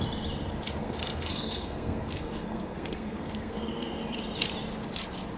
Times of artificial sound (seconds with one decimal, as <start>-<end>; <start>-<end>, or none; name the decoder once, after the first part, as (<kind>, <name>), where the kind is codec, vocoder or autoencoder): 0.8-4.0 (codec, SNAC)